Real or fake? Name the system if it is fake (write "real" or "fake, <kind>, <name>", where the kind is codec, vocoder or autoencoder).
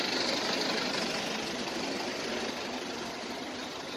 real